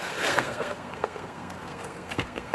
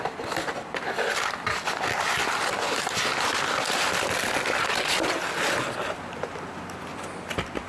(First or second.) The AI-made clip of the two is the first